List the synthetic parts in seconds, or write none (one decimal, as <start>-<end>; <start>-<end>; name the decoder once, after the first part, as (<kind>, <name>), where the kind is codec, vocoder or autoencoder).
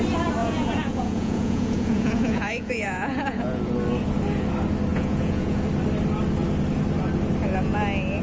0.4-3.6 (vocoder, Vocos); 4.9-5.6